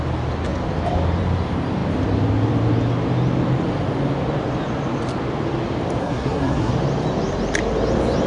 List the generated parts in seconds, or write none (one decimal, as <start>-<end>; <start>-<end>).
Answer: 6.0-6.7